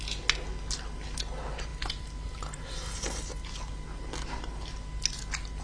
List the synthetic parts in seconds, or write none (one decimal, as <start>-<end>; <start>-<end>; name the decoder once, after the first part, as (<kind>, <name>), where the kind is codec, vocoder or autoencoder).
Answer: none